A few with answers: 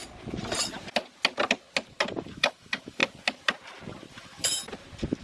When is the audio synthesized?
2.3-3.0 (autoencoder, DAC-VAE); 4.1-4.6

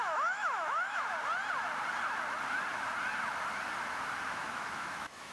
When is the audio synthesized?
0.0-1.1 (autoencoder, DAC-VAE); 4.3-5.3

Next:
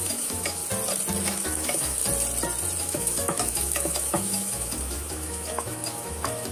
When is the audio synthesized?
0.0-0.6 (autoencoder, DAC-VAE); 1.2-2.0; 2.8-6.5

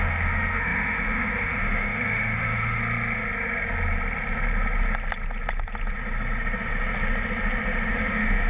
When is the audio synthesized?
0.0-2.8 (autoencoder, DAC-VAE); 7.9-8.5